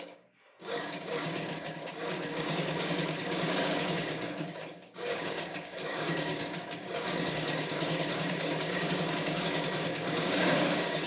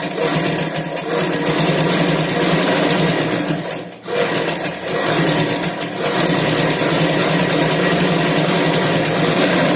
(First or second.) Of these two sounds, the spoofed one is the first